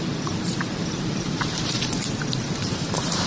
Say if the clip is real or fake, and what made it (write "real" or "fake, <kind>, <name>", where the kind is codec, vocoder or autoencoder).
fake, vocoder, BigVGAN v2